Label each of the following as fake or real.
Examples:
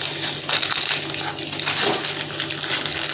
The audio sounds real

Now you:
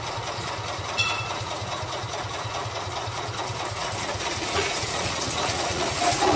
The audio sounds fake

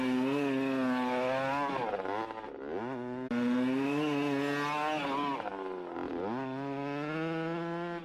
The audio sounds real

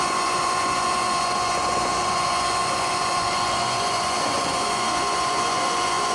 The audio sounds fake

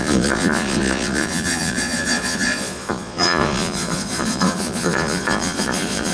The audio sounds fake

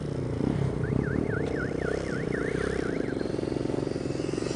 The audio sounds real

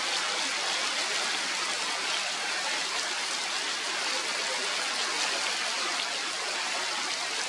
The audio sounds real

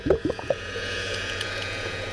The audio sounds fake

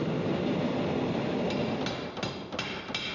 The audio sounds real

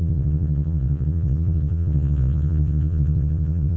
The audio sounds fake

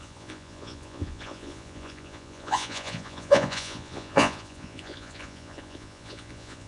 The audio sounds fake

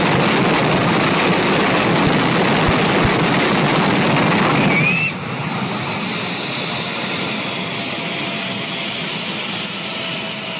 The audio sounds real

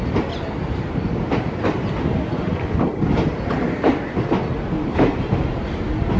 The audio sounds real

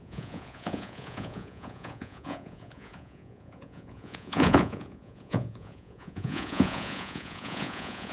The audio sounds fake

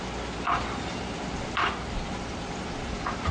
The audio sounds real